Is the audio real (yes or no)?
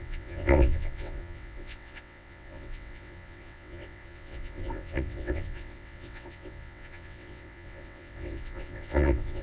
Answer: no